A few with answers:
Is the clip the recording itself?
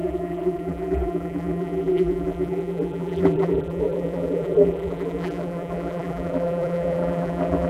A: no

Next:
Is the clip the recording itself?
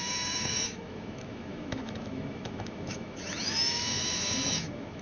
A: no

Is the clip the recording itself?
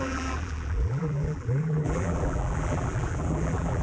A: no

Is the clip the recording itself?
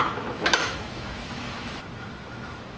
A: no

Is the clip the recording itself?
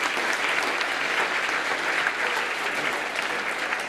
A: yes